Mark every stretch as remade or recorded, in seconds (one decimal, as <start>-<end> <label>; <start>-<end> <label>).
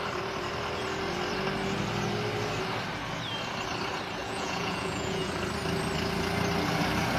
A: 0.0-4.2 recorded; 4.2-5.3 remade; 5.3-7.2 recorded